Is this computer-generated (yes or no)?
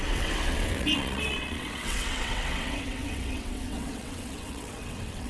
yes